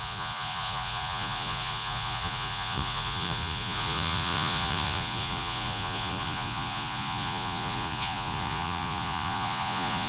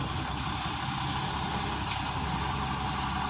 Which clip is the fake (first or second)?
first